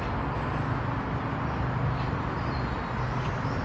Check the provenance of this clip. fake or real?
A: real